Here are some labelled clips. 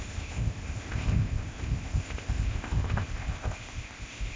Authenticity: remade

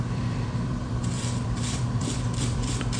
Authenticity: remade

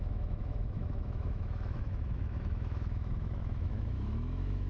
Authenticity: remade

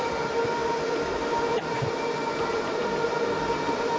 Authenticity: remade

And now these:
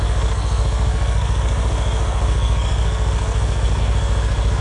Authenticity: remade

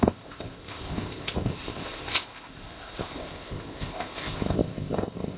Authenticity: remade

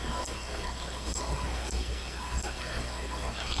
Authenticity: remade